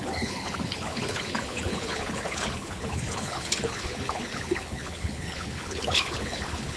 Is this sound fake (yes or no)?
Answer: yes